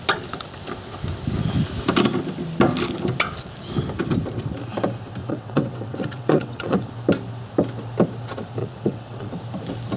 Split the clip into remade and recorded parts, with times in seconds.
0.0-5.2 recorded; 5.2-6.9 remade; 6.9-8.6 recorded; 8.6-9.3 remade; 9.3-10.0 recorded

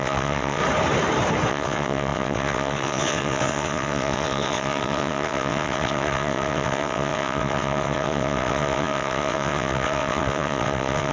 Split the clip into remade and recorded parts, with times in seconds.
0.0-0.6 remade; 0.6-1.5 recorded; 1.5-11.1 remade

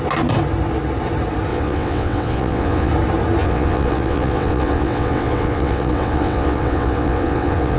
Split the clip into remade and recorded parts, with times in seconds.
0.0-1.5 recorded; 1.5-2.9 remade; 2.9-3.4 recorded; 3.4-7.8 remade